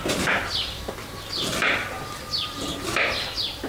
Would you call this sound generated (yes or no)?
no